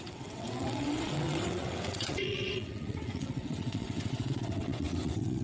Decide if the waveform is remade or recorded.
remade